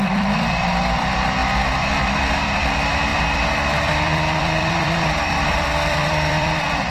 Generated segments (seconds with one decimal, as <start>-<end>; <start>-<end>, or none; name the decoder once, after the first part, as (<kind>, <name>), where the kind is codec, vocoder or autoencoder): 0.0-1.4 (vocoder, BigVGAN v2); 2.0-6.9